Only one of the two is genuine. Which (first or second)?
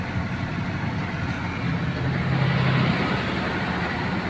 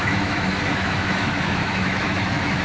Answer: first